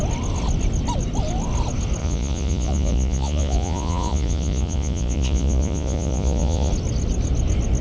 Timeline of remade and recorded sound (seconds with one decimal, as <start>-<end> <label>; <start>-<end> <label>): 0.0-2.0 recorded; 2.0-6.7 remade; 6.7-7.8 recorded